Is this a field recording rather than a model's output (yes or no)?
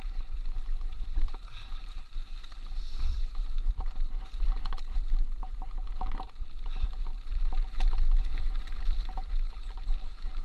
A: no